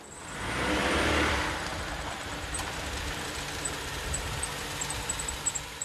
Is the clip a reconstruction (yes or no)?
yes